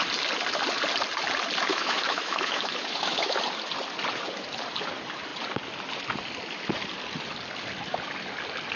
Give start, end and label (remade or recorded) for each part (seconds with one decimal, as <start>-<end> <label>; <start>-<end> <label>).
0.0-1.7 recorded; 1.7-3.4 remade; 3.4-8.8 recorded